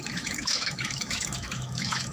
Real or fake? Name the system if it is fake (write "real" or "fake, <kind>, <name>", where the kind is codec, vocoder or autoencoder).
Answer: fake, autoencoder, DAC-VAE